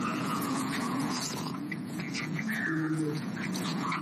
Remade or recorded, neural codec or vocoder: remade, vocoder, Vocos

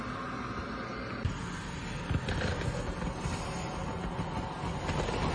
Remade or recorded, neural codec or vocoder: recorded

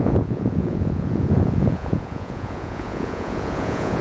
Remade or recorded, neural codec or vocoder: remade, vocoder, Vocos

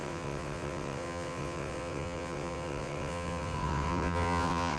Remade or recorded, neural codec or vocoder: remade, vocoder, WaveNeXt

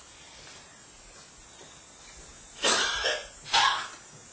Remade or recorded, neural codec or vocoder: recorded